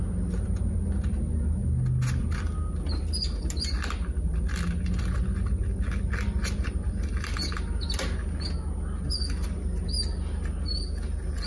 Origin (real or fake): real